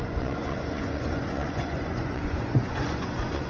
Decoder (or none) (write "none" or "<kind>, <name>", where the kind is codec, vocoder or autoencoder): vocoder, Vocos